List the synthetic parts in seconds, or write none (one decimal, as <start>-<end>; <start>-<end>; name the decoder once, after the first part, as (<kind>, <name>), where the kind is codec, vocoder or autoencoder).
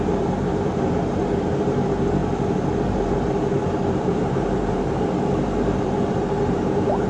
0.0-2.2 (vocoder, BigVGAN v2); 2.8-7.1